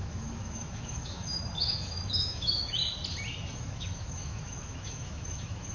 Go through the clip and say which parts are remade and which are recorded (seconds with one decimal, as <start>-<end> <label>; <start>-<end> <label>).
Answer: 0.0-2.8 remade; 2.8-3.6 recorded; 3.6-5.7 remade